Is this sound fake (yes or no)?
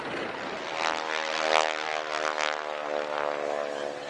no